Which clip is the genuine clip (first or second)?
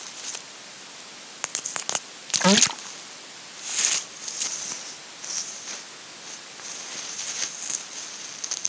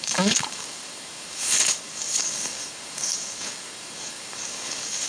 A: first